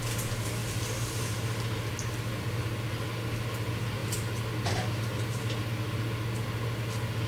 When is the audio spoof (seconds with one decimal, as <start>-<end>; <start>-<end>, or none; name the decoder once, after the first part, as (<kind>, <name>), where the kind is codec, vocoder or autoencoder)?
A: 0.6-2.6 (vocoder, BigVGAN v2); 4.0-5.4